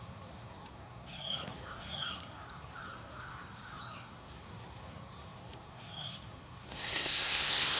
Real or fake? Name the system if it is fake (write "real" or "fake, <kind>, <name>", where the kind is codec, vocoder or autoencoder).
fake, codec, SNAC